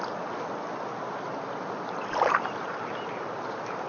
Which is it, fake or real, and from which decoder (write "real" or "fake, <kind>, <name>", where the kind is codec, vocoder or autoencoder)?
real